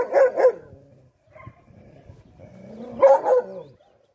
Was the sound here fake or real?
real